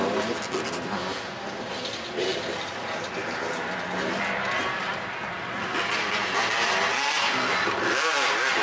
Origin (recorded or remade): recorded